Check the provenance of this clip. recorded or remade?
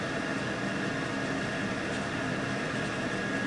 recorded